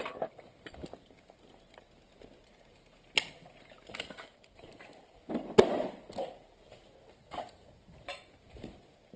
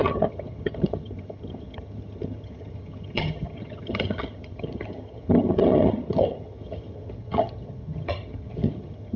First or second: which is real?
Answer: first